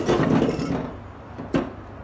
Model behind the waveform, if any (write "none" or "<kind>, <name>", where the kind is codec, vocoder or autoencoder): none